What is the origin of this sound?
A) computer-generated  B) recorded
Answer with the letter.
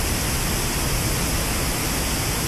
B